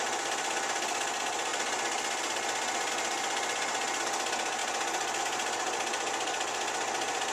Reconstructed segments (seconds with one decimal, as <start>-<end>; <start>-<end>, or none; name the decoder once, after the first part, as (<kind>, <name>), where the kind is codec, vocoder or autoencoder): none